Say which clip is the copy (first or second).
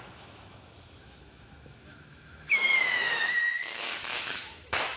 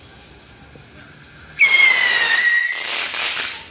first